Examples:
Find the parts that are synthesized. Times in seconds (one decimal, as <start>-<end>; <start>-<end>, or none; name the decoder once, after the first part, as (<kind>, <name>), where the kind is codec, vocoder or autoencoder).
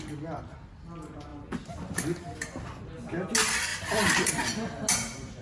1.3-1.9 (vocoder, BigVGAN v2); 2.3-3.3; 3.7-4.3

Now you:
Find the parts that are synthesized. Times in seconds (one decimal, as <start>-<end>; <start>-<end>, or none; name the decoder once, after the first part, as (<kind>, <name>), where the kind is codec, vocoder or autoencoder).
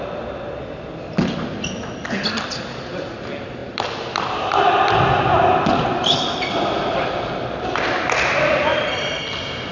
3.6-7.3 (vocoder, BigVGAN v2)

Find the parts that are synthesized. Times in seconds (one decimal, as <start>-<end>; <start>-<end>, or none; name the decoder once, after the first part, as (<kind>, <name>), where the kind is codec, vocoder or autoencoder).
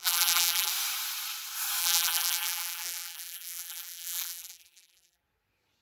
0.0-0.7 (vocoder, BigVGAN v2); 1.8-5.2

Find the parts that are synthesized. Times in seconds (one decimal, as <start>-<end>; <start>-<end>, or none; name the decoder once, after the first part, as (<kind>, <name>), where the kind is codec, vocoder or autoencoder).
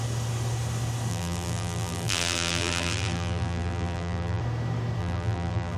1.1-4.4 (vocoder, BigVGAN v2); 5.0-5.8